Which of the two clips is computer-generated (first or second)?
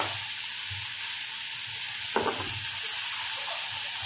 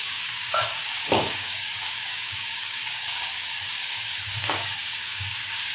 second